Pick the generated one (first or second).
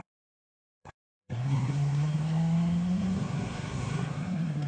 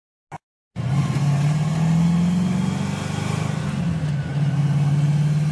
first